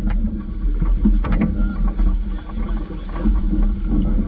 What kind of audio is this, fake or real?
real